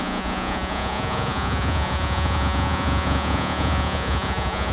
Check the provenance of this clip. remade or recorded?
remade